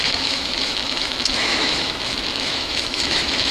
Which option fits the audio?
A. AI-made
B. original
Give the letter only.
A